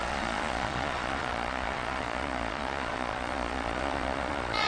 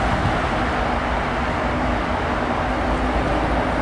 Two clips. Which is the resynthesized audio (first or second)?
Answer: first